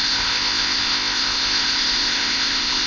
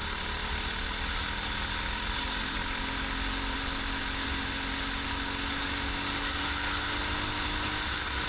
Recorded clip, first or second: second